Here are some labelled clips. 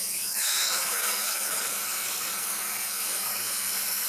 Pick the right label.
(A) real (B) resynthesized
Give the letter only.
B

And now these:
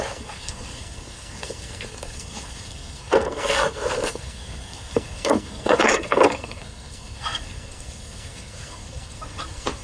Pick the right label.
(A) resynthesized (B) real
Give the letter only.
A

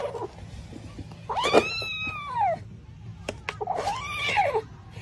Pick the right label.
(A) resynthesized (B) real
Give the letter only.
B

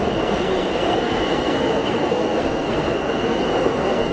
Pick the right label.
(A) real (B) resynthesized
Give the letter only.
B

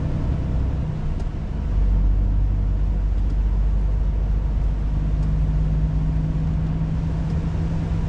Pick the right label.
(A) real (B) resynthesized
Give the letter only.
A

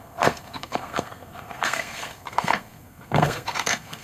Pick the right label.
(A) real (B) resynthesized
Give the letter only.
B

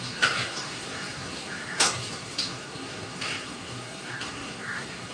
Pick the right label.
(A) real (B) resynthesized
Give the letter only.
B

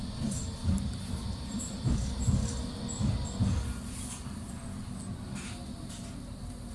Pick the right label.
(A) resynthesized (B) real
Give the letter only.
B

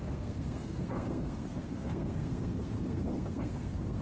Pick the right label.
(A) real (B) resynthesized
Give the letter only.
B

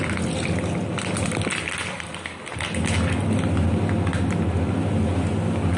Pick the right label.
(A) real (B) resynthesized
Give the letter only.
A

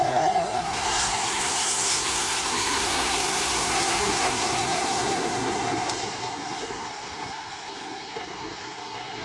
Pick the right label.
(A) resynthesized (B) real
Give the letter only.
A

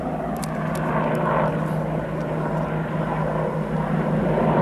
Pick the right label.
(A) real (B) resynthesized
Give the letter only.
A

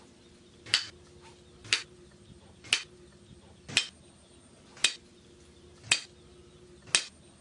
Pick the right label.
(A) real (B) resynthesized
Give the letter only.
A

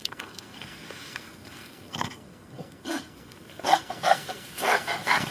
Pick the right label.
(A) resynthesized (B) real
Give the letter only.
A